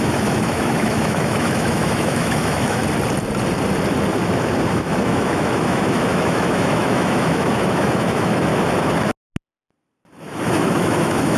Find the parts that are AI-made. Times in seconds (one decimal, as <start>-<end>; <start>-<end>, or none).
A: 0.0-2.8; 4.7-8.5; 10.2-11.4

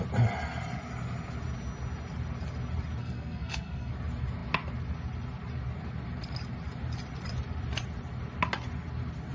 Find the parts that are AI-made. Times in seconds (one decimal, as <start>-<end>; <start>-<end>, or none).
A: 3.0-3.9

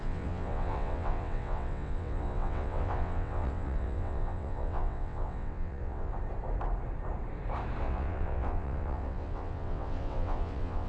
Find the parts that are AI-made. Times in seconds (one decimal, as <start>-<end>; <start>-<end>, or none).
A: 0.0-6.1; 7.8-10.9

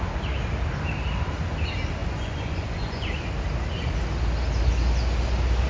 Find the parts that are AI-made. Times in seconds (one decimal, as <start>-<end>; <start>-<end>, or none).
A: 2.0-3.2

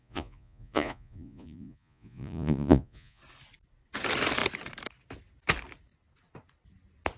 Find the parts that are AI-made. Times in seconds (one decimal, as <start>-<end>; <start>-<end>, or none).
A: 0.0-3.2